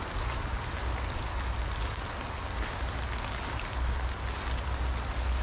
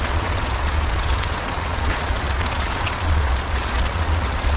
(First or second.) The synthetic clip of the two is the second